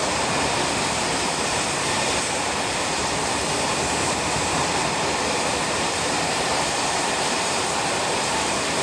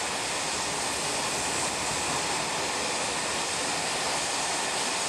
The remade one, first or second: first